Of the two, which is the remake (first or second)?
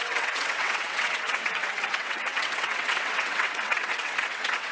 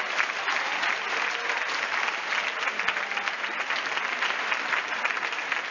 first